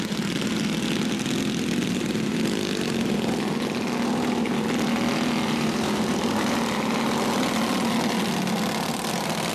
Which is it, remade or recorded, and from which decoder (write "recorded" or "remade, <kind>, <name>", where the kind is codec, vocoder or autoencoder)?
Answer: recorded